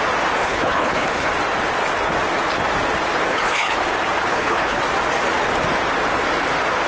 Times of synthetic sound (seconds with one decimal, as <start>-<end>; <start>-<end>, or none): 0.4-1.3; 3.3-3.8; 4.3-4.8